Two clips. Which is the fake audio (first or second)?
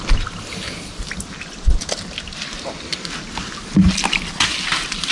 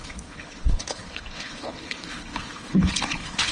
second